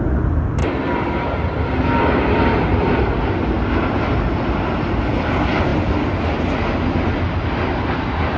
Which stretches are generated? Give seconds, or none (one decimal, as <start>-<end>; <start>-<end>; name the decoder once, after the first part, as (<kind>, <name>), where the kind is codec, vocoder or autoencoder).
0.6-1.8 (vocoder, BigVGAN v2)